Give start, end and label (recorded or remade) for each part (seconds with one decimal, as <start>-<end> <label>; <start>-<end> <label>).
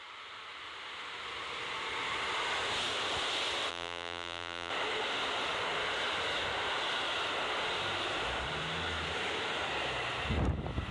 0.0-3.7 recorded; 3.7-4.7 remade; 4.7-10.9 recorded